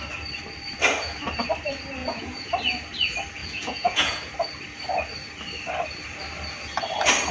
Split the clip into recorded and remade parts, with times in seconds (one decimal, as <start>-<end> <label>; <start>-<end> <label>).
0.0-2.0 recorded; 2.0-2.5 remade; 2.5-3.4 recorded; 3.4-4.2 remade; 4.2-7.3 recorded

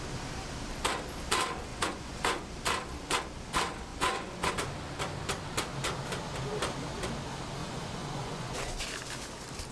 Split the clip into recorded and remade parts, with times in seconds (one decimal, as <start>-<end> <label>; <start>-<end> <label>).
0.0-1.7 recorded; 1.7-2.5 remade; 2.5-3.9 recorded; 3.9-4.5 remade; 4.5-7.6 recorded; 7.6-8.7 remade; 8.7-9.7 recorded

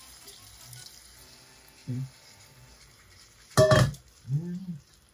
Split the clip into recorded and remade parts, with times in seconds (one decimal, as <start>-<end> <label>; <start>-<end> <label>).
0.0-1.8 recorded; 1.8-2.9 remade; 2.9-5.1 recorded

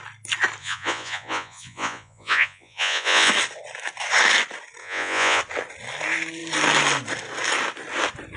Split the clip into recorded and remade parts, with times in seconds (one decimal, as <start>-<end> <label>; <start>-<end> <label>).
0.0-0.6 recorded; 0.6-3.3 remade; 3.3-4.8 recorded; 4.8-5.4 remade; 5.4-8.4 recorded

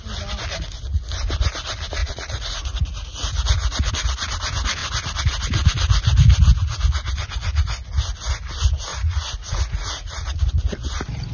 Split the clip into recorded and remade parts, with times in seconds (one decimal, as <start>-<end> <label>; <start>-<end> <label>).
0.0-2.0 recorded; 2.0-3.9 remade; 3.9-8.9 recorded; 8.9-10.5 remade; 10.5-11.3 recorded